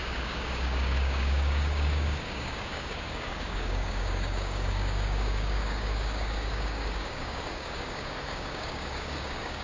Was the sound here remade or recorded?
remade